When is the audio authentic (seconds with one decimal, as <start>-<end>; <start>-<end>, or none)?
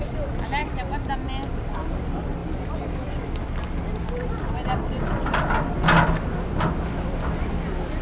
0.0-8.0